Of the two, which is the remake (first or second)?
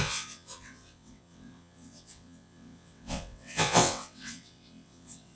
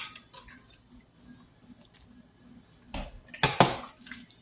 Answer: first